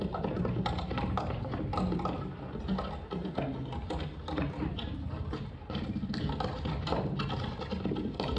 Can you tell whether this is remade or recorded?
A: recorded